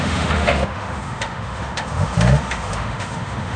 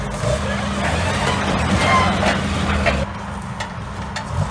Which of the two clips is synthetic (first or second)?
first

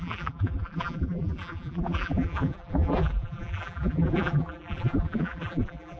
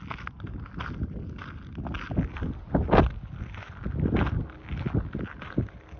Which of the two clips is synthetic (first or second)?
first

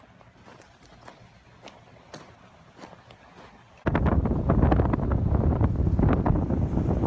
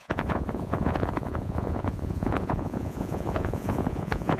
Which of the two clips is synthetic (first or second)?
second